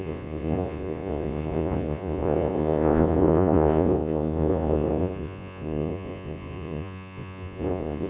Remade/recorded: remade